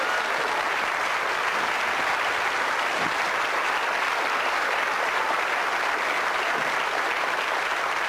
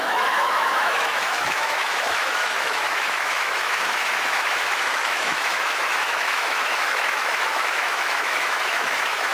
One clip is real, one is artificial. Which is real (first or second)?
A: first